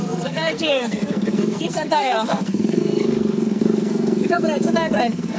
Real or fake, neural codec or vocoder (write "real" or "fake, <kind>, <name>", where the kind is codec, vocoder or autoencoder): fake, codec, SNAC